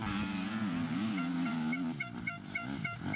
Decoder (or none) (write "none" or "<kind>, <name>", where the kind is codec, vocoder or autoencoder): none